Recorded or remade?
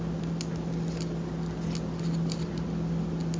recorded